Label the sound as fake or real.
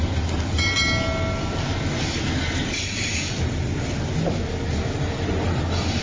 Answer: real